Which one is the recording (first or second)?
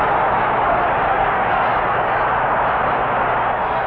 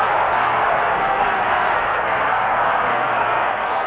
first